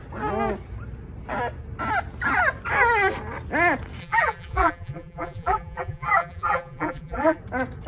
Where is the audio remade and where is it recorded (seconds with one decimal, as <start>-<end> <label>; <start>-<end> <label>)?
0.0-4.0 recorded; 4.0-7.4 remade; 7.4-7.9 recorded